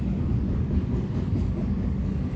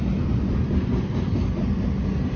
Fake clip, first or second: first